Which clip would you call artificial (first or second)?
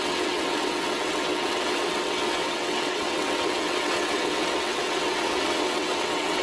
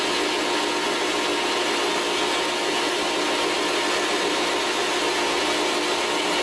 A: first